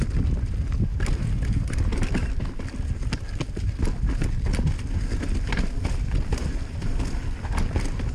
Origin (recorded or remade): recorded